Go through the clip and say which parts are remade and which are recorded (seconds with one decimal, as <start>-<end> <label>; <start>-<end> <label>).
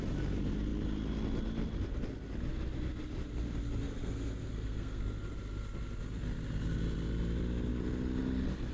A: 0.0-3.8 recorded; 3.8-5.0 remade; 5.0-8.7 recorded